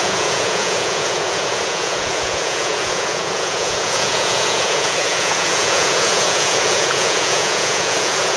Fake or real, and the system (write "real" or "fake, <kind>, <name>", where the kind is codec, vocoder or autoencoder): fake, vocoder, Vocos